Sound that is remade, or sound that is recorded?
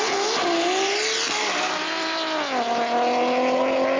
recorded